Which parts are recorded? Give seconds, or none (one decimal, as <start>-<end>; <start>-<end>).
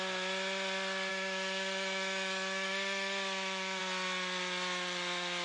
0.0-1.1; 3.8-5.4